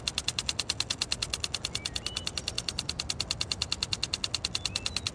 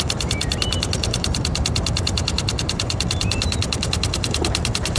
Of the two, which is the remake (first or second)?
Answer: second